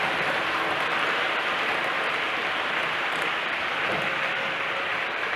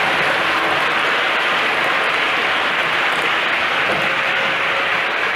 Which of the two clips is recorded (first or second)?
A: second